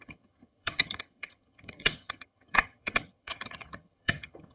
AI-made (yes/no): yes